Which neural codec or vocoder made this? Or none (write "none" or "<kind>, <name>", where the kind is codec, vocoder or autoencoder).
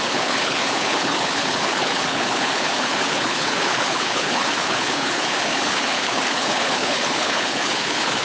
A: codec, HILCodec